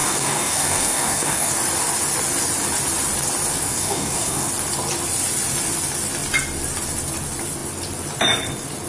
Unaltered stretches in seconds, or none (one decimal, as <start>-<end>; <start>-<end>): 1.5-3.7; 4.5-8.9